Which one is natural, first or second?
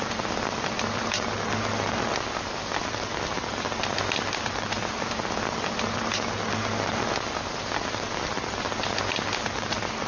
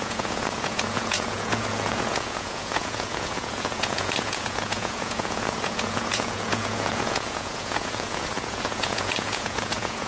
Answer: first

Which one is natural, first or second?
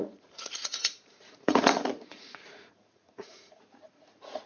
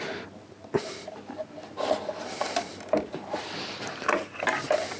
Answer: second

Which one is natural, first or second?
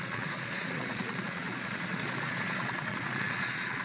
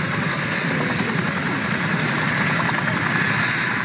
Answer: second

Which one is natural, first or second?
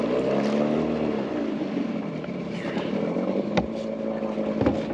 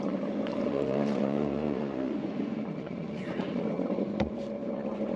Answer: first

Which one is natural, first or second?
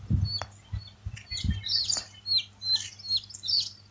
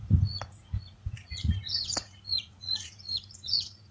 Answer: first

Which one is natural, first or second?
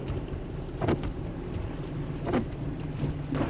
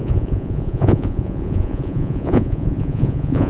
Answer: first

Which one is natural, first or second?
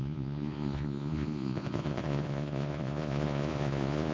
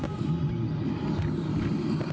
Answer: second